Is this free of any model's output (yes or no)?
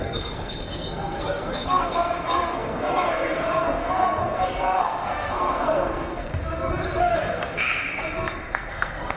no